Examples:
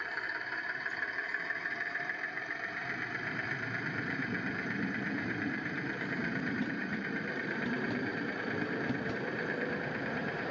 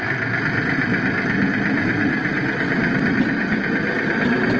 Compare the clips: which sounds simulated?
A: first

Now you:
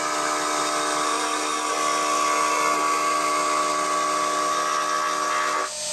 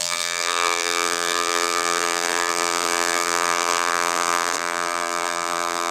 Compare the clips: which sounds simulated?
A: second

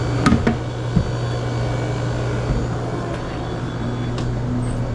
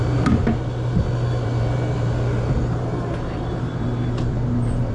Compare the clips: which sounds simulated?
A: second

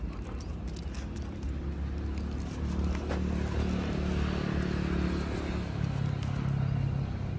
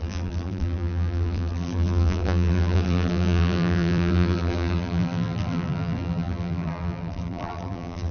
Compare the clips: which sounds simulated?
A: second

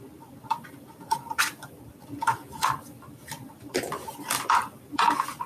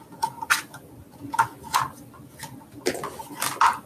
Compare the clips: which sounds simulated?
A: first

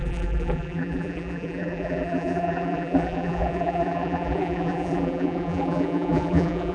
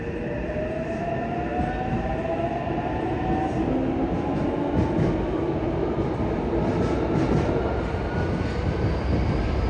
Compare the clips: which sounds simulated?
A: first